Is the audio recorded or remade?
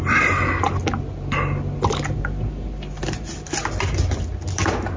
recorded